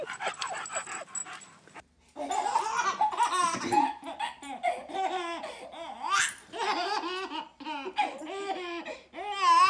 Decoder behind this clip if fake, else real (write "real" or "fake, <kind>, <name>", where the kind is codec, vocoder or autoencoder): real